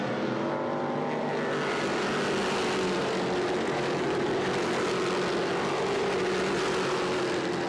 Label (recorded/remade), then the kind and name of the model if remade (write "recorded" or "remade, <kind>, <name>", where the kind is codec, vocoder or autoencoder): recorded